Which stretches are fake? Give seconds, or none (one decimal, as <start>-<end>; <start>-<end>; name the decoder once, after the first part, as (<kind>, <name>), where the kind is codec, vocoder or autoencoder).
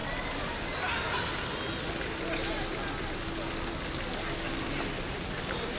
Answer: none